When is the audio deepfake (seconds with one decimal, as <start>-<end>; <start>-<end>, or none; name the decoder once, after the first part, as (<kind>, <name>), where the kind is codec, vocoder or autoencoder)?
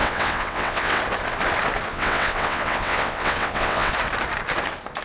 0.0-1.0 (vocoder, WaveNeXt); 1.9-3.9